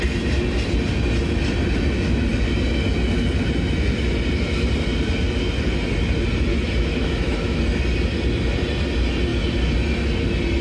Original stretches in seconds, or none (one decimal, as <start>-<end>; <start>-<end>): 0.0-6.5; 7.6-10.6